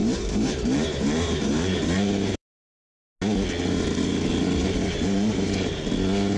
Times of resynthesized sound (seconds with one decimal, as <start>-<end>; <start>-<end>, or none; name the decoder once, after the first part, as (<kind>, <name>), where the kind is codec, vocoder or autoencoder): 0.0-2.6 (vocoder, BigVGAN v2); 4.6-5.8